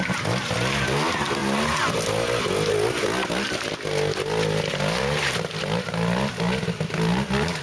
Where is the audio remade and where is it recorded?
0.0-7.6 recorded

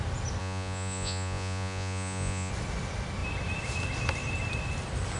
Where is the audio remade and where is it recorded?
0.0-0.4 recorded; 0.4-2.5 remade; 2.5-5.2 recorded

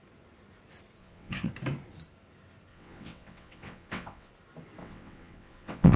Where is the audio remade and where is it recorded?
0.0-1.0 recorded; 1.0-1.5 remade; 1.5-2.7 recorded; 2.7-4.3 remade; 4.3-4.8 recorded; 4.8-6.0 remade